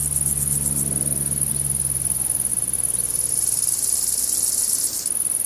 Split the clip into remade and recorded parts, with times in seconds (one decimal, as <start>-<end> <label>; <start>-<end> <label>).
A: 0.0-5.5 recorded